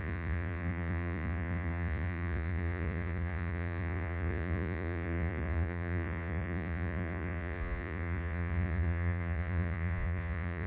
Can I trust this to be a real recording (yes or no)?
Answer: no